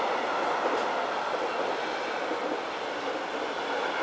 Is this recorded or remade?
recorded